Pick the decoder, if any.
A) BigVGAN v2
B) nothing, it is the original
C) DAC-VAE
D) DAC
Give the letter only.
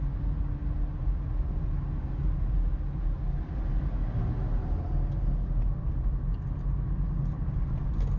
B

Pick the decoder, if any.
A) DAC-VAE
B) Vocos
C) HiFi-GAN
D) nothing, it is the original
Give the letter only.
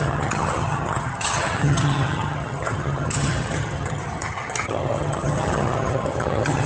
C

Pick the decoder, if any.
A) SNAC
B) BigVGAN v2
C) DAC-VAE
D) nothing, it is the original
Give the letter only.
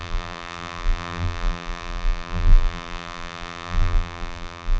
B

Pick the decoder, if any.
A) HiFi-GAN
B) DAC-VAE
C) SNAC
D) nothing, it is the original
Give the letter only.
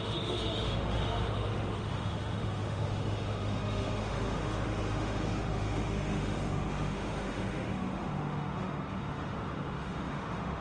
B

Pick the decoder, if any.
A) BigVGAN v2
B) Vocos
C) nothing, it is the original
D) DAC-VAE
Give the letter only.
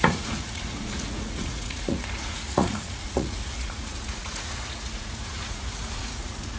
B